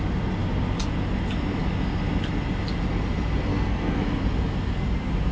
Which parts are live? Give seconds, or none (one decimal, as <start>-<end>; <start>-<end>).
0.0-3.5; 4.0-5.3